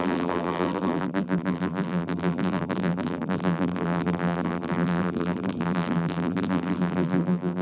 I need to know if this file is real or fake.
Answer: fake